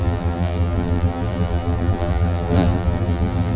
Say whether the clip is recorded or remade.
remade